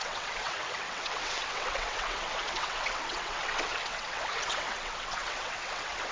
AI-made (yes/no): yes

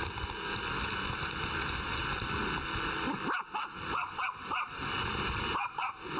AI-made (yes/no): no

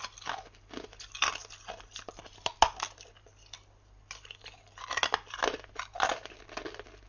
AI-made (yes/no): no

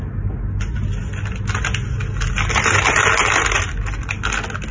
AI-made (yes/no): no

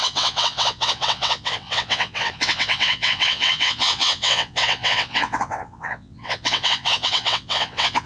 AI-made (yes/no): yes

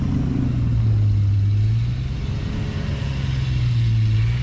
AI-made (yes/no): no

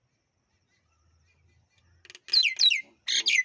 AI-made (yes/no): no